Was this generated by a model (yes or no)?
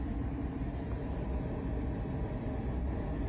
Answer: no